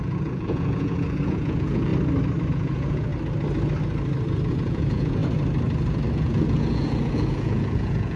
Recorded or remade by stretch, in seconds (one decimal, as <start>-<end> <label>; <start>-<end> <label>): 0.0-1.9 remade; 1.9-2.5 recorded; 2.5-3.1 remade; 3.1-4.5 recorded; 4.5-5.2 remade; 5.2-6.1 recorded; 6.1-8.2 remade